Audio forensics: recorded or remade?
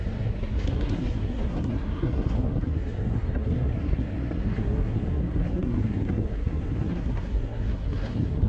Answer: remade